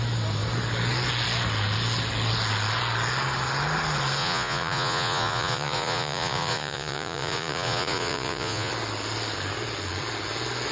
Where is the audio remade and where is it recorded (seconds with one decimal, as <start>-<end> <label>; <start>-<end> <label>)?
0.0-4.2 recorded; 4.2-8.7 remade; 8.7-10.7 recorded